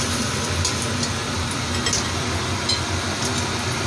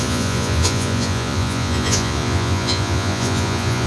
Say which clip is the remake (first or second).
second